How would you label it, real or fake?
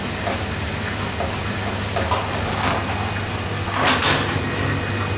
real